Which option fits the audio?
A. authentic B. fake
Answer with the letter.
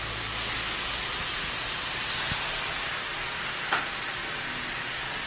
A